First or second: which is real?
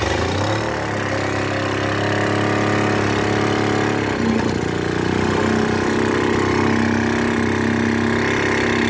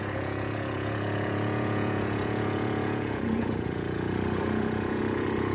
first